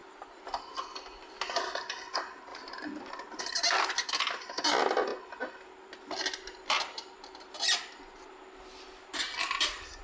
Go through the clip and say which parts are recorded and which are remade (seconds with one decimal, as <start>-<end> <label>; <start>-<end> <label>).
0.0-10.0 recorded